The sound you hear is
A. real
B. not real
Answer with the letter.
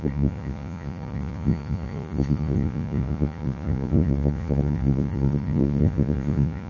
B